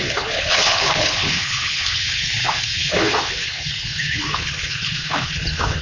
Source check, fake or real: fake